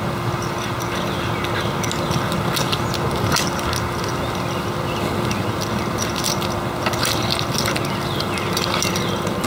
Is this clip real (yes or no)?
yes